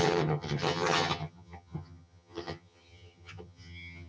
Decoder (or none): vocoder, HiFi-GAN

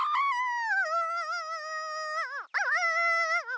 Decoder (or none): none